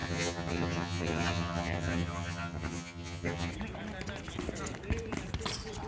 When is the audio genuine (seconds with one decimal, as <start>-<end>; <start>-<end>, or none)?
3.5-5.9

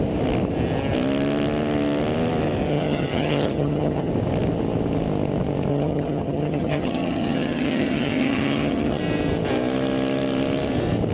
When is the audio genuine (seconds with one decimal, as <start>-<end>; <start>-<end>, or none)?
0.0-2.7; 4.1-5.7; 9.0-11.1